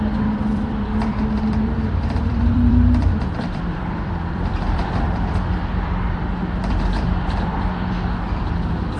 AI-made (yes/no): yes